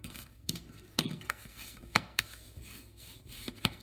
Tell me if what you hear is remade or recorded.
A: remade